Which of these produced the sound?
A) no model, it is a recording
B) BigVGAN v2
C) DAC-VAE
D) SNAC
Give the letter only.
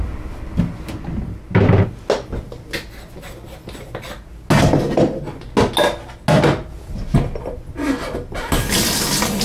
A